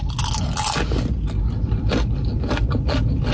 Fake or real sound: real